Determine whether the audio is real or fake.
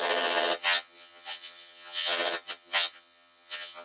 fake